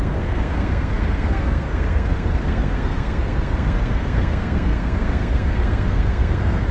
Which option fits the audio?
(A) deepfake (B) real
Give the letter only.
A